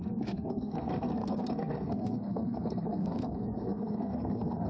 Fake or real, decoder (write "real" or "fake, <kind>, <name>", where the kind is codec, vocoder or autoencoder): fake, codec, SNAC